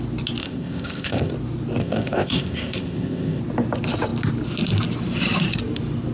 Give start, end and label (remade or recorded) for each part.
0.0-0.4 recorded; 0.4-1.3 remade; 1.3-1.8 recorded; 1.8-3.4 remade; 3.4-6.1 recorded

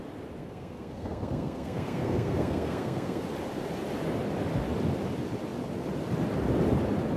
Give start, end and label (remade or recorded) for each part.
0.0-0.4 recorded; 0.4-3.2 remade; 3.2-7.2 recorded

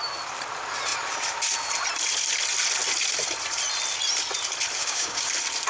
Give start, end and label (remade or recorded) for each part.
0.0-4.8 recorded; 4.8-5.3 remade; 5.3-5.7 recorded

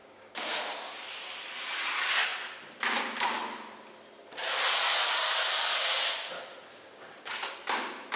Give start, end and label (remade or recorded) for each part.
0.0-0.6 remade; 0.6-6.7 recorded; 6.7-7.3 remade; 7.3-8.2 recorded

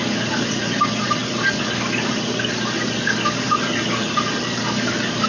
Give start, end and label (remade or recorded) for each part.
0.0-5.3 recorded

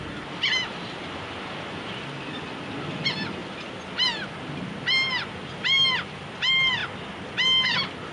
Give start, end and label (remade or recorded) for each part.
0.0-8.1 recorded

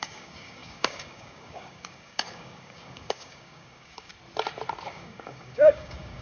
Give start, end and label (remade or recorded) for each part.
0.0-4.1 remade; 4.1-4.9 recorded; 4.9-6.2 remade

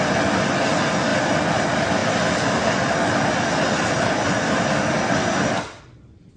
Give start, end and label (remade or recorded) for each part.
0.0-6.4 recorded